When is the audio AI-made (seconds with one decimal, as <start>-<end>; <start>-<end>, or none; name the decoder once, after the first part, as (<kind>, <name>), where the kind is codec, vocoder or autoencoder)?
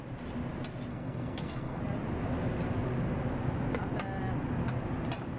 0.9-1.8 (codec, SNAC)